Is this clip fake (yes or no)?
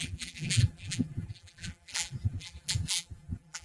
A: yes